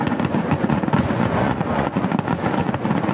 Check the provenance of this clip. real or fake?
fake